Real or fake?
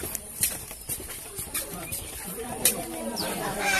fake